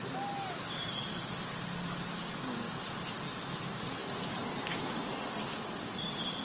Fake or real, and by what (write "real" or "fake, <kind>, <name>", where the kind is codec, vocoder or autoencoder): real